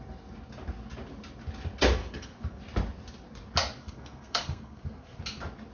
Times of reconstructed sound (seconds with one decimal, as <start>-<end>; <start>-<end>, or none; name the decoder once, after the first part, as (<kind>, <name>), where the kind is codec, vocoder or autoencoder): 2.0-2.6 (codec, SNAC); 3.8-5.2